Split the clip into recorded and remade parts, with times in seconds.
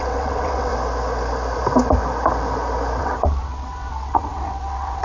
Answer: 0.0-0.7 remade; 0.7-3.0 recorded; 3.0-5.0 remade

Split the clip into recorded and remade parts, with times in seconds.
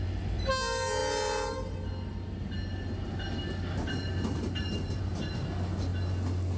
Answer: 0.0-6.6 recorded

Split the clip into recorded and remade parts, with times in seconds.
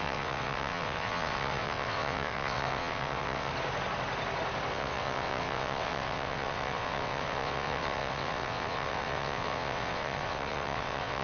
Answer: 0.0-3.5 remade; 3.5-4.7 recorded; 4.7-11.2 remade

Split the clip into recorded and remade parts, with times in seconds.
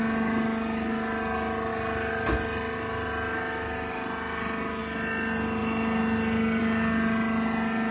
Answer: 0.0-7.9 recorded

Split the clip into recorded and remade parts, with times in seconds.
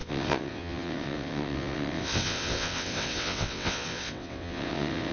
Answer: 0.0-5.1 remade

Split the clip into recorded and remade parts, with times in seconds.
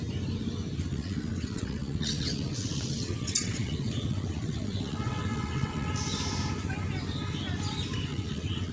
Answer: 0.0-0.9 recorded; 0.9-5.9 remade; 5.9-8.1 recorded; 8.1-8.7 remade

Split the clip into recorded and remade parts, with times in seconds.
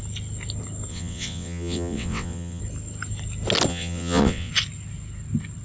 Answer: 0.0-0.9 recorded; 0.9-2.6 remade; 2.6-3.7 recorded; 3.7-4.5 remade; 4.5-5.6 recorded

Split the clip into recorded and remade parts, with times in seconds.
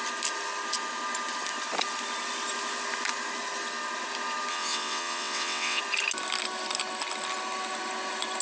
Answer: 0.0-4.5 recorded; 4.5-5.8 remade; 5.8-8.4 recorded